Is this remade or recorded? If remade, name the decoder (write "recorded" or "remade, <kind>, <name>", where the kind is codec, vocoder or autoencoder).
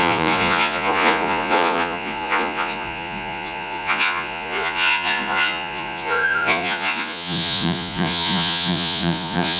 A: remade, vocoder, Vocos